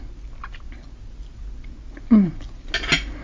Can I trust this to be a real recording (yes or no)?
yes